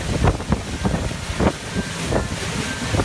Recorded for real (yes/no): yes